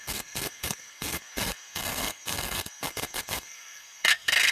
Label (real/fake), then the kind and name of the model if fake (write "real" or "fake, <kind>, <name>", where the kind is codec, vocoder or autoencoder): fake, codec, SNAC